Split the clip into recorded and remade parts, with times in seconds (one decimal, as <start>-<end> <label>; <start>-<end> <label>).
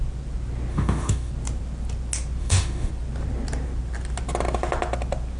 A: 0.0-0.7 recorded; 0.7-1.3 remade; 1.3-2.4 recorded; 2.4-2.9 remade; 2.9-5.4 recorded